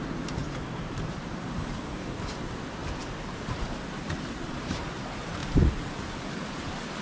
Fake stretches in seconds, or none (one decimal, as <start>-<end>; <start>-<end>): 0.0-2.8; 4.5-5.4; 6.3-7.0